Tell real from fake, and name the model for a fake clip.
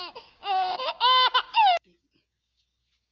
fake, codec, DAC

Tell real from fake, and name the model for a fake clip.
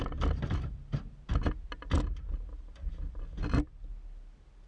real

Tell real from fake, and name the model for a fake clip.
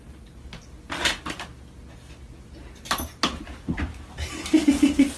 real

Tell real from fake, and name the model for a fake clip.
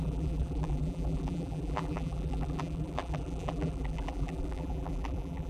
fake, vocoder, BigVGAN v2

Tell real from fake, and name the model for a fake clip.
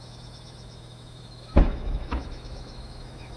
fake, autoencoder, DAC-VAE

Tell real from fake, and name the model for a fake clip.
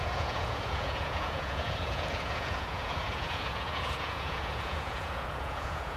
fake, vocoder, Vocos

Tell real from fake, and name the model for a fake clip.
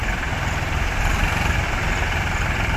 real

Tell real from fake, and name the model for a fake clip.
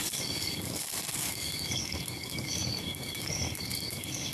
fake, codec, DAC